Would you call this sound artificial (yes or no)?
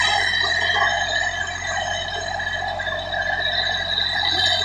no